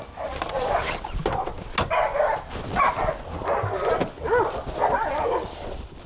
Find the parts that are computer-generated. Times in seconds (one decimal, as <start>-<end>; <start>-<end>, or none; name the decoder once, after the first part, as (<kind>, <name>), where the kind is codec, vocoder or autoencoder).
none